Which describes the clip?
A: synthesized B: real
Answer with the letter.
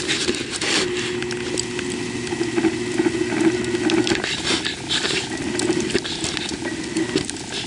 B